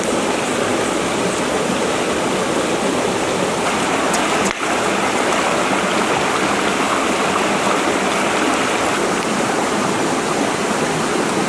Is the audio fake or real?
real